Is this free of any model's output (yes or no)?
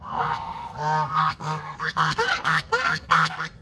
no